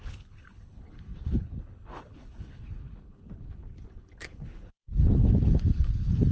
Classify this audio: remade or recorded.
remade